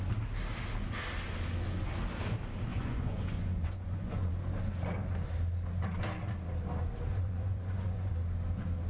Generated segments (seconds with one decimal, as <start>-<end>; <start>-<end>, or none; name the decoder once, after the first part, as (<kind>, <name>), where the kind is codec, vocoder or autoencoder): 2.7-4.3 (vocoder, Vocos); 7.1-8.1